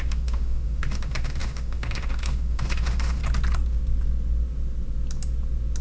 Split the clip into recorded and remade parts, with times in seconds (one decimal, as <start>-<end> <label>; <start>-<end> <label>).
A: 0.0-3.2 remade; 3.2-5.8 recorded